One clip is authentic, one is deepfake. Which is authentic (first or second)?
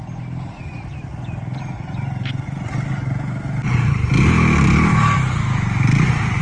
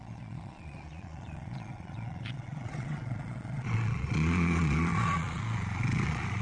first